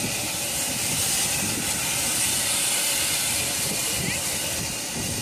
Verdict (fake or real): real